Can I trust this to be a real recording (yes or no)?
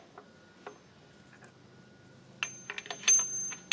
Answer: yes